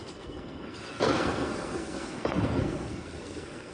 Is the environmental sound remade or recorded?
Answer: remade